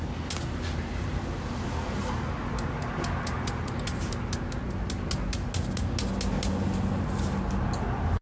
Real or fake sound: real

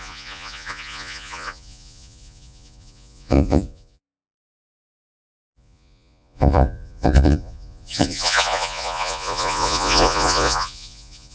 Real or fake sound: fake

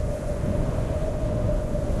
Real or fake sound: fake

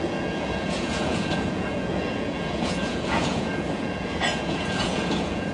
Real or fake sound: fake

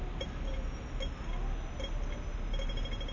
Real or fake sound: real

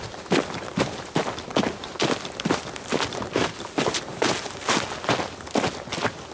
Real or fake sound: real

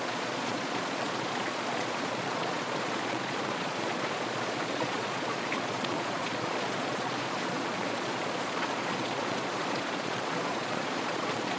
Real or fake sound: fake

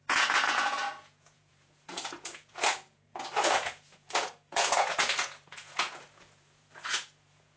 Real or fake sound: fake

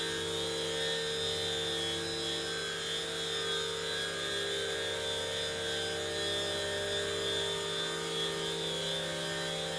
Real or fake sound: real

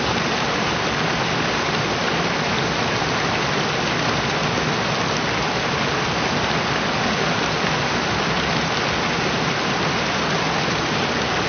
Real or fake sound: real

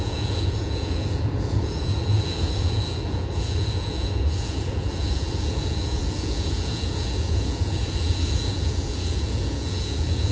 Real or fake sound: fake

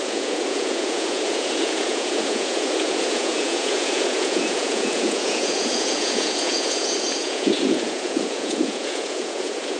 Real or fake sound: fake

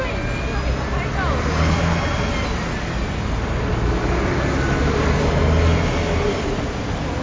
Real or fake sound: real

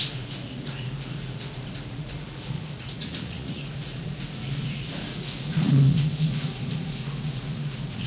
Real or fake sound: fake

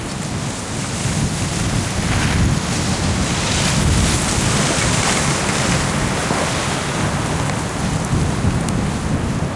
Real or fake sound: real